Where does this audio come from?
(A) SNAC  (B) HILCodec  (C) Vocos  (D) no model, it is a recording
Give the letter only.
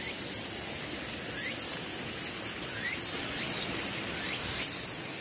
D